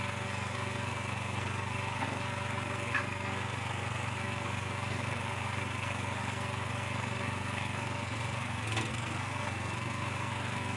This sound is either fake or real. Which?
fake